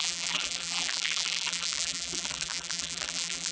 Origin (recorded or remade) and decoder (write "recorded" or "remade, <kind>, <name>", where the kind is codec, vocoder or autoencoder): remade, vocoder, BigVGAN v2